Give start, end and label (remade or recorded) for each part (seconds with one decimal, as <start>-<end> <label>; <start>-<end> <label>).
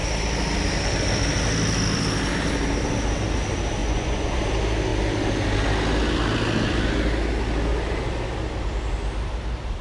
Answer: 0.0-3.8 recorded; 3.8-4.4 remade; 4.4-9.8 recorded